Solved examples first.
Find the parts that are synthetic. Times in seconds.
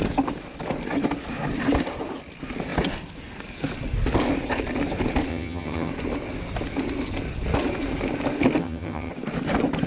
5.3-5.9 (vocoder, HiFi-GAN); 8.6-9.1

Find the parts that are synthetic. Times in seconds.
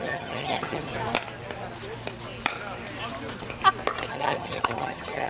0.0-0.9 (vocoder, HiFi-GAN); 4.1-5.3